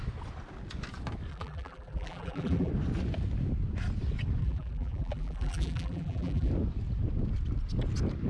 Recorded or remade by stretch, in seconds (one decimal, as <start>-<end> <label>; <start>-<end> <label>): 0.0-1.3 recorded; 1.3-2.7 remade; 2.7-4.4 recorded; 4.4-6.5 remade; 6.5-8.3 recorded